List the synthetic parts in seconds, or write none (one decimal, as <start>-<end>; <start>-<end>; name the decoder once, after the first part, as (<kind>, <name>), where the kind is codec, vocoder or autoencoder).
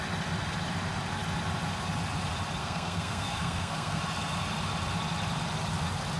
2.6-4.0 (codec, SNAC)